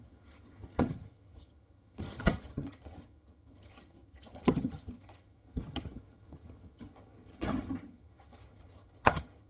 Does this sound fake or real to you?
fake